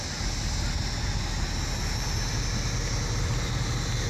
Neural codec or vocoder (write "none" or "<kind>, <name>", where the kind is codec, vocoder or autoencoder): none